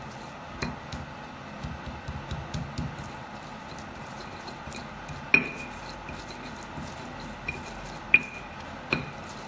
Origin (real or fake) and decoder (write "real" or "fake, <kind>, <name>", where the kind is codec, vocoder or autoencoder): real